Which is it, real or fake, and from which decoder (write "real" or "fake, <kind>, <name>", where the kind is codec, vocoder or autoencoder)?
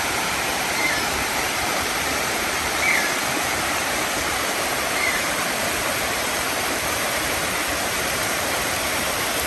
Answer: fake, vocoder, BigVGAN v2